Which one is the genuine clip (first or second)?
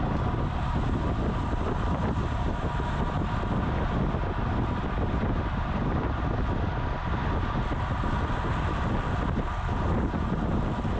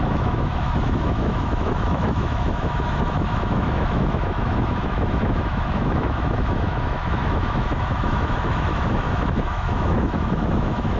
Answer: first